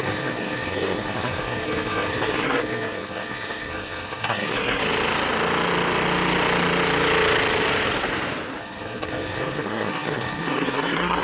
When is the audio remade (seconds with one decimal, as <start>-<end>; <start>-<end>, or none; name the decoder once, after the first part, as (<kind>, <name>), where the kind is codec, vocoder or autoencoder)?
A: 0.0-4.8 (codec, SNAC); 8.6-11.2